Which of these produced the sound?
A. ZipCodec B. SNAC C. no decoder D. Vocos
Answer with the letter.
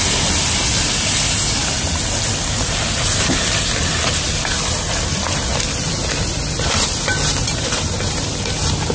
C